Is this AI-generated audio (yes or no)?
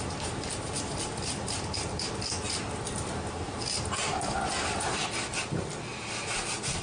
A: no